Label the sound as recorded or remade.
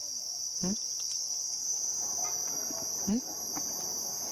recorded